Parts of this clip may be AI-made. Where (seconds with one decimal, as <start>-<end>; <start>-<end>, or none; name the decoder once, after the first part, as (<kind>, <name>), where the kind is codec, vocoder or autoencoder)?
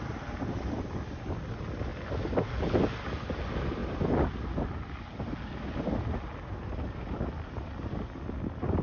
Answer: none